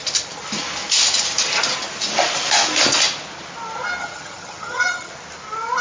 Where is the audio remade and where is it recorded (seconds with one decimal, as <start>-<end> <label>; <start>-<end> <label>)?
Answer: 0.0-4.0 recorded; 4.0-5.1 remade; 5.1-5.8 recorded